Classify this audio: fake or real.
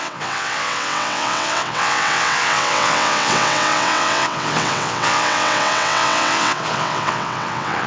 fake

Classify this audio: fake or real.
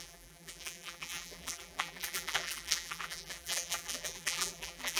fake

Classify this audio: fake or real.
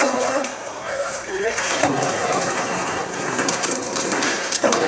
fake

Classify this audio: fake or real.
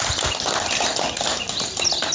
fake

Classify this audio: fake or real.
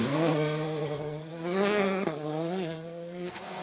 fake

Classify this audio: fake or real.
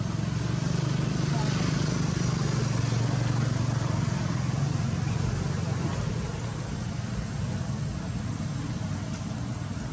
real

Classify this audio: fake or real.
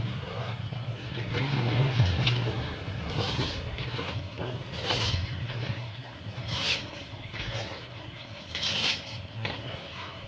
fake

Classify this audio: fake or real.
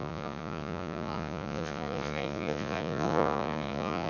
fake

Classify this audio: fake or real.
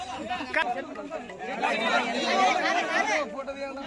real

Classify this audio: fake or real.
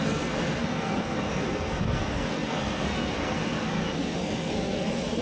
fake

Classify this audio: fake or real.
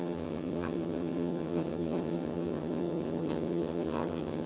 fake